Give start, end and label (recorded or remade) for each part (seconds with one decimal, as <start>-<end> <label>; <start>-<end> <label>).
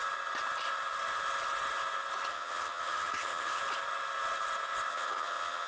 0.0-2.3 recorded; 2.3-3.6 remade; 3.6-4.9 recorded; 4.9-5.7 remade